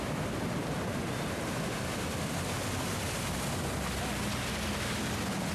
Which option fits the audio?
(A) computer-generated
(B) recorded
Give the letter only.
B